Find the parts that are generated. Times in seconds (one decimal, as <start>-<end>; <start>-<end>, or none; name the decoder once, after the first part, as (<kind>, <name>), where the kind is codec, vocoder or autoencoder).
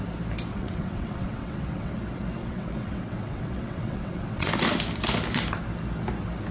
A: 0.5-1.9 (vocoder, WaveNeXt); 2.4-4.5